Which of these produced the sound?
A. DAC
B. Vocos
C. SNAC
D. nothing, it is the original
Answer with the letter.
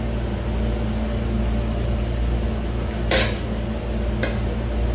D